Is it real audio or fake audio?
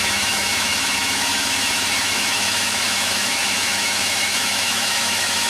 fake